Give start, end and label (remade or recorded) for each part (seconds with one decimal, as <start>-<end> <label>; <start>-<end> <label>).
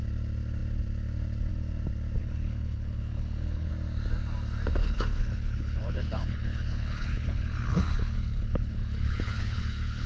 0.0-2.2 recorded; 2.2-3.7 remade; 3.7-4.8 recorded; 4.8-10.1 remade